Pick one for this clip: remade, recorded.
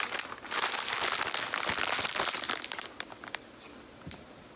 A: recorded